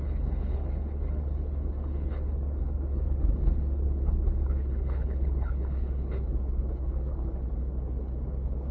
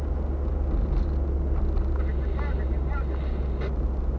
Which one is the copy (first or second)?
first